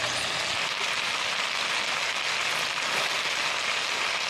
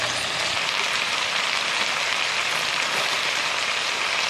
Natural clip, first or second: first